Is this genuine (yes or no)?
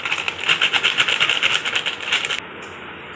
yes